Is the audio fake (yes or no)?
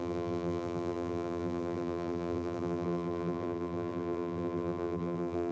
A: yes